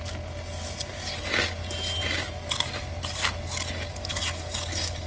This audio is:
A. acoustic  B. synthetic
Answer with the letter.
A